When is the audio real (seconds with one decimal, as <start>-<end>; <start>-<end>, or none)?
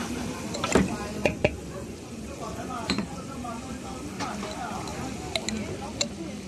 0.0-1.2; 3.7-6.5